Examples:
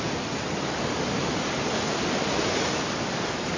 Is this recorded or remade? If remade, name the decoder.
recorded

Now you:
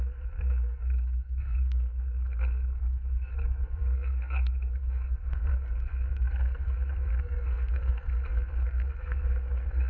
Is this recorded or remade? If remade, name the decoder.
remade, codec, SNAC